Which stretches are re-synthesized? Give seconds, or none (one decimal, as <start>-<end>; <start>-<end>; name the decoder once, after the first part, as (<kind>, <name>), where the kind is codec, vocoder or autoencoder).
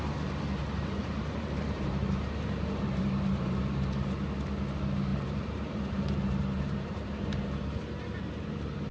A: 0.6-3.6 (vocoder, BigVGAN v2); 5.1-8.9